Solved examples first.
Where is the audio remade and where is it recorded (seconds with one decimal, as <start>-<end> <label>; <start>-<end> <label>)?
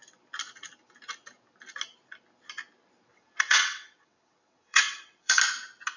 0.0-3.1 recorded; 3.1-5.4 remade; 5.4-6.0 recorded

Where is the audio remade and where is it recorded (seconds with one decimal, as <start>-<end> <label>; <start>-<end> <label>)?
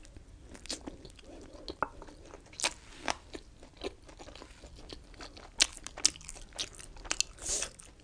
0.0-8.0 recorded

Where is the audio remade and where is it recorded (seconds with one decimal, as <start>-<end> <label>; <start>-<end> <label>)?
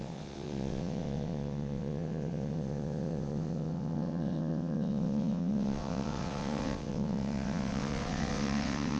0.0-9.0 remade